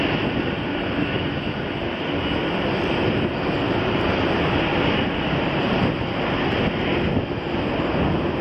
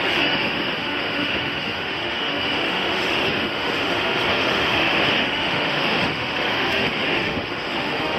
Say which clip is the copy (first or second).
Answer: second